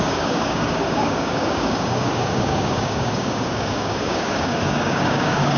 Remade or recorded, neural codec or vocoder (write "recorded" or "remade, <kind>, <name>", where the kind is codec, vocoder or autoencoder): remade, codec, DAC